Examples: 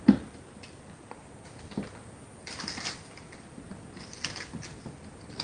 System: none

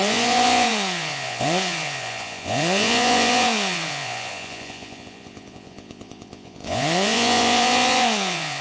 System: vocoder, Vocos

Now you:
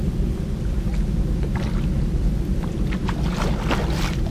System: none